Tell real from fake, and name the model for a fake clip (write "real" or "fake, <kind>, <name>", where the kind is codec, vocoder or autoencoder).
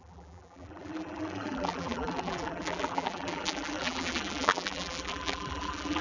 fake, vocoder, BigVGAN v2